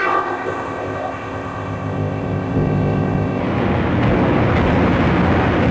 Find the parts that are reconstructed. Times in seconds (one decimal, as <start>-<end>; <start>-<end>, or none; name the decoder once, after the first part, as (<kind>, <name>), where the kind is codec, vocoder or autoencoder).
0.0-3.4 (codec, ZipCodec)